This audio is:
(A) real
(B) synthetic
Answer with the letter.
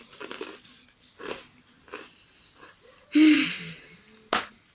A